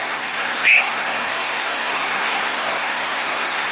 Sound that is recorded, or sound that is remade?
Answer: remade